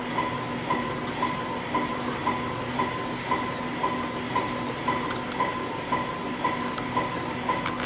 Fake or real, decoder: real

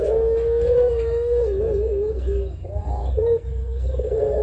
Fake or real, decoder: fake, codec, SNAC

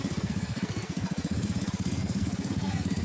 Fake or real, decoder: fake, codec, SNAC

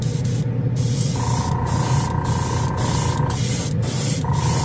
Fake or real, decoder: real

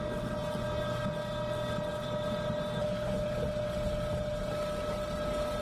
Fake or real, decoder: real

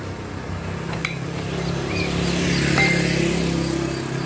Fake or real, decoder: real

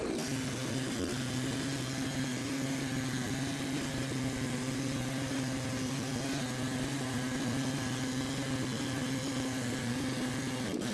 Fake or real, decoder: real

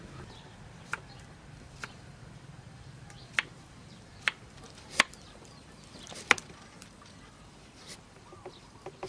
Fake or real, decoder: fake, vocoder, BigVGAN v2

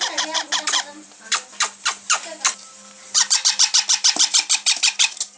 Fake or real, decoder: fake, vocoder, BigVGAN v2